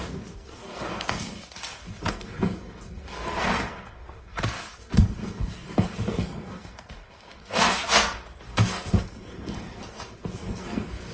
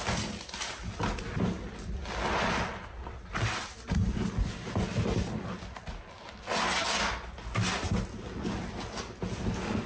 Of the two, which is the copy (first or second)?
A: first